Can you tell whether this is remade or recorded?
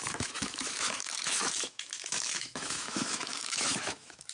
remade